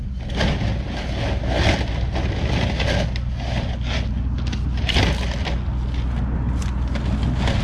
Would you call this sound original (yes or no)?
yes